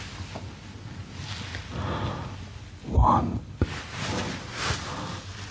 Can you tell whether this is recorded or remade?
recorded